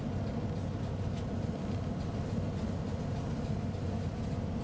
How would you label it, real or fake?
real